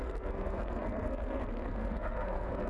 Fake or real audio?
fake